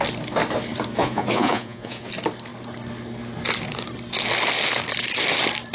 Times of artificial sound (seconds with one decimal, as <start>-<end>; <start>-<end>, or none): 1.0-2.1